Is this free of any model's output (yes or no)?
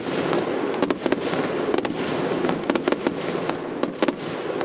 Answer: yes